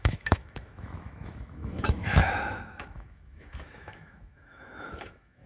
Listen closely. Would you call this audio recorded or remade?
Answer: remade